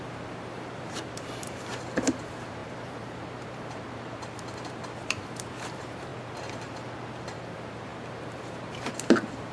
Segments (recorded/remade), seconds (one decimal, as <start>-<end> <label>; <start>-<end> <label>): 0.0-6.1 remade; 6.1-7.2 recorded; 7.2-9.5 remade